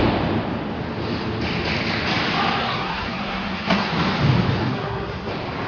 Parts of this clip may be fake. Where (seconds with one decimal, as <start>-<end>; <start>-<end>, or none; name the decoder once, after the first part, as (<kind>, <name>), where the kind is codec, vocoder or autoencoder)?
2.6-3.9 (codec, SNAC); 4.6-5.3